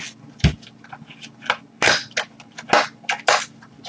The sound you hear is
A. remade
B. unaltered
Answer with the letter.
B